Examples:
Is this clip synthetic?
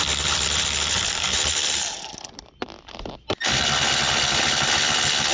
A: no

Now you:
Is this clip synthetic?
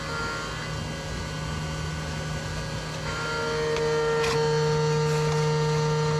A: no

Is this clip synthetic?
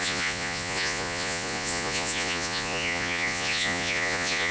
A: yes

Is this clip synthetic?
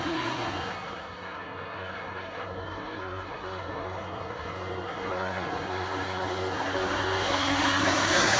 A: yes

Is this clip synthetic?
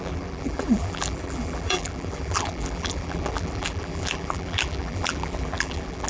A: yes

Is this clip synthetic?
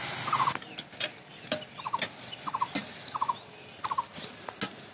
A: no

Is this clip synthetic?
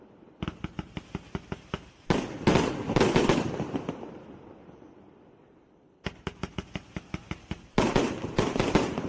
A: no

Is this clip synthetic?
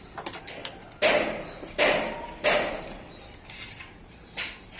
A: no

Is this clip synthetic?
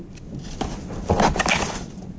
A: no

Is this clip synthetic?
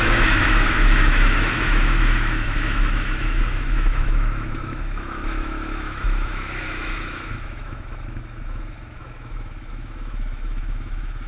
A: yes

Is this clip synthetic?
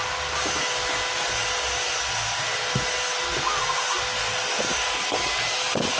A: no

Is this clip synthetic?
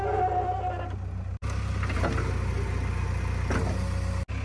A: no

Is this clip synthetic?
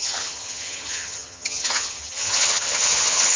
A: yes